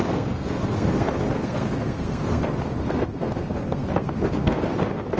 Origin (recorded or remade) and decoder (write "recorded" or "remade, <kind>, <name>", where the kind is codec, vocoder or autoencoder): remade, codec, SNAC